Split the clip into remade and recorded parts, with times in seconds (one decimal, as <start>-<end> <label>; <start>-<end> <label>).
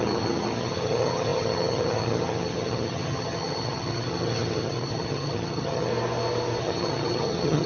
0.0-5.9 remade; 5.9-6.6 recorded; 6.6-7.7 remade